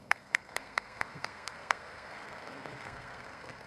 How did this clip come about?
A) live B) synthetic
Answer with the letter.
B